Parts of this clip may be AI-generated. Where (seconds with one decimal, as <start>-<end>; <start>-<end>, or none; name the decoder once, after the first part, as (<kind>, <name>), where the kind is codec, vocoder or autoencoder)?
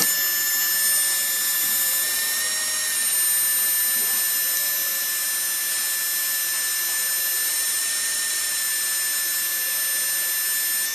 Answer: none